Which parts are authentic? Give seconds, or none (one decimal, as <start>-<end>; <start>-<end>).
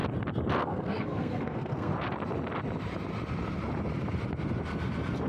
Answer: 0.0-0.6; 1.9-5.3